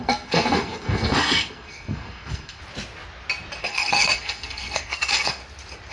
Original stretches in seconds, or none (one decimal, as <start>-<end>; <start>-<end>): 2.6-3.6; 5.4-5.9